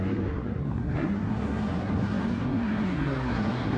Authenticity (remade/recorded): remade